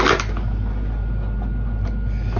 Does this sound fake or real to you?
real